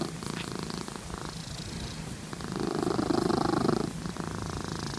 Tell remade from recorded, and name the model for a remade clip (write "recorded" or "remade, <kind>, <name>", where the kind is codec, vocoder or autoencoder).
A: remade, vocoder, BigVGAN v2